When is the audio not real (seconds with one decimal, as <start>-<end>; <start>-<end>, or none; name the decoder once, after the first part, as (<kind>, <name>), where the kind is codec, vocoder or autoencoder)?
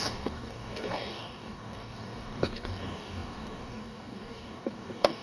0.0-5.2 (codec, DAC)